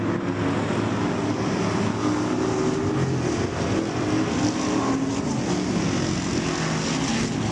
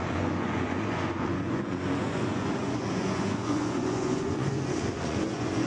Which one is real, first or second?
first